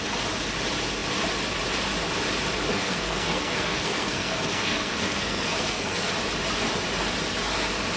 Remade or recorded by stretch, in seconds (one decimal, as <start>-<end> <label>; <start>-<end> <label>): 0.0-2.7 recorded; 2.7-6.1 remade; 6.1-8.0 recorded